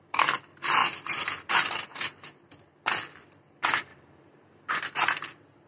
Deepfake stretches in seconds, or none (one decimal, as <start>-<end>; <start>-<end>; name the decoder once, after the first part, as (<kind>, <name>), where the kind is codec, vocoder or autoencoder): 0.0-3.9 (vocoder, BigVGAN v2); 4.7-5.7